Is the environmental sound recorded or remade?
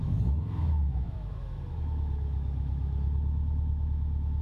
remade